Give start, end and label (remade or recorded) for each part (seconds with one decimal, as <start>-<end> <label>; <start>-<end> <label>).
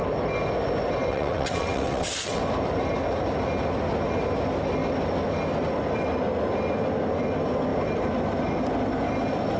0.0-1.1 recorded; 1.1-2.4 remade; 2.4-9.6 recorded